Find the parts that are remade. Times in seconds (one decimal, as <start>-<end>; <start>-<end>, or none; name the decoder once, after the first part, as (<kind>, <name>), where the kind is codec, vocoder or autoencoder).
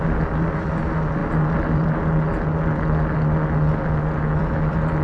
none